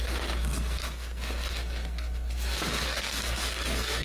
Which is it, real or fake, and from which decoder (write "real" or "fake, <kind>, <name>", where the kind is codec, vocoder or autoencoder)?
fake, codec, SNAC